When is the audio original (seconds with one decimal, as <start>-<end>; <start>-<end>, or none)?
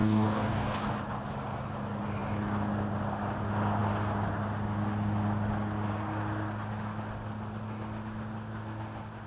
0.9-9.3